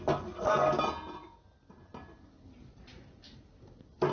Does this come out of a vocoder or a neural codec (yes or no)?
no